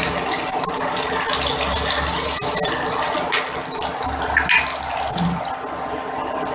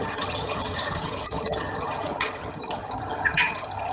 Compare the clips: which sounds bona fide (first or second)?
first